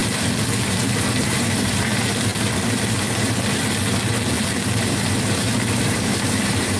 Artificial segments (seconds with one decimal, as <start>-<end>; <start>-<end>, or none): 0.8-2.3; 5.3-6.8